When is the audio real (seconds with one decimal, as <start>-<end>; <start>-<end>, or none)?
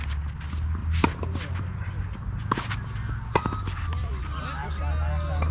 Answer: 0.0-0.8; 4.1-5.5